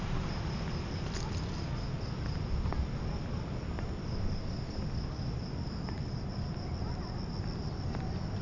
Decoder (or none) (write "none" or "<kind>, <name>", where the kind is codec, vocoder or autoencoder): none